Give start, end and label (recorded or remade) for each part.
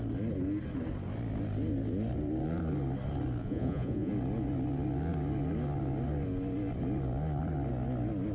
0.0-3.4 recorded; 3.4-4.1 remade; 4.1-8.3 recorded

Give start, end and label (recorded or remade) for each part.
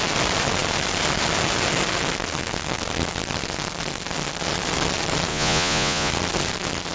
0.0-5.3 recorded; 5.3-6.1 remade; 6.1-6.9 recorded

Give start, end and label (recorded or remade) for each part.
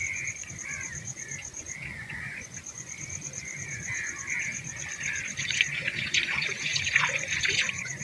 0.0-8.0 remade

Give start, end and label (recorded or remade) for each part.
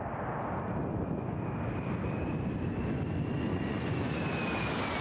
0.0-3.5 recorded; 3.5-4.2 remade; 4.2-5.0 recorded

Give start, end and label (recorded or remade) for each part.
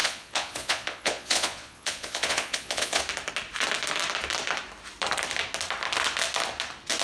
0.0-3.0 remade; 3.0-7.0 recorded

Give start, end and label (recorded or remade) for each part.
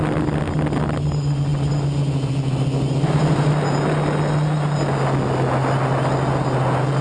0.0-7.0 recorded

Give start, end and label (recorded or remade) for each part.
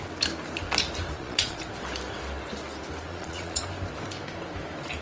0.0-1.1 recorded; 1.1-1.6 remade; 1.6-3.1 recorded; 3.1-3.6 remade; 3.6-5.0 recorded